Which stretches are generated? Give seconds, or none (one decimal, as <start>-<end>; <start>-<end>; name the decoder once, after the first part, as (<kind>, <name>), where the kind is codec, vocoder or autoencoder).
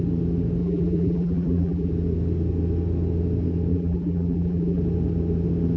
0.6-1.9 (vocoder, BigVGAN v2); 3.7-4.8